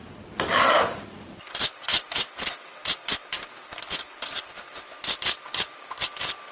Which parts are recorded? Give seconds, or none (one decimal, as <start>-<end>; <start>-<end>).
0.0-6.5